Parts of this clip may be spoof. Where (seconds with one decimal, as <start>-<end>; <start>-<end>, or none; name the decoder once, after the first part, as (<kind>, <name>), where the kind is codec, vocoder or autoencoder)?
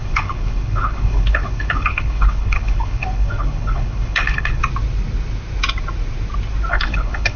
0.0-4.6 (codec, HILCodec); 6.7-7.4